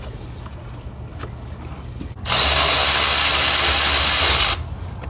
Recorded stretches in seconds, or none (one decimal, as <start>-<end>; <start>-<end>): 0.0-5.1